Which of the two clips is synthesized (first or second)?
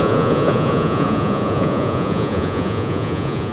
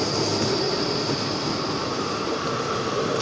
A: first